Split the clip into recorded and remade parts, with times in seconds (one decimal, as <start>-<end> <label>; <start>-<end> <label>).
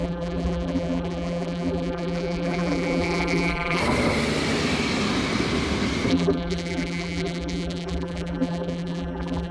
0.0-3.8 remade; 3.8-6.1 recorded; 6.1-9.5 remade